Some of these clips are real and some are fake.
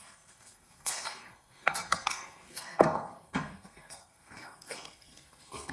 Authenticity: fake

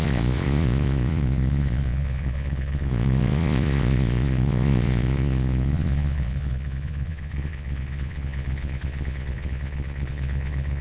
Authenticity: fake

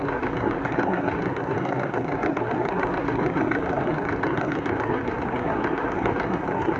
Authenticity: fake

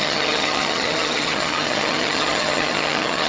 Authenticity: fake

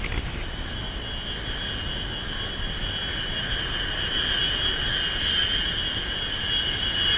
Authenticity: real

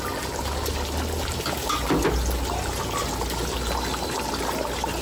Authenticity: real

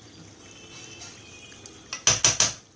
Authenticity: real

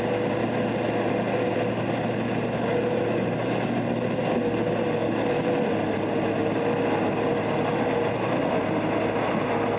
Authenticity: real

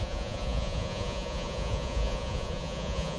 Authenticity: fake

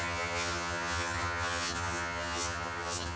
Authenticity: fake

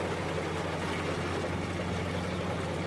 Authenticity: real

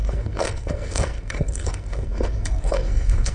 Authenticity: fake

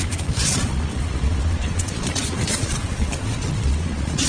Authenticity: fake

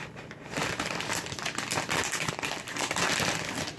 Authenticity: real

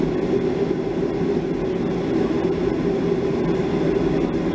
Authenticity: real